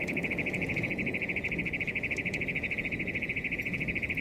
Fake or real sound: fake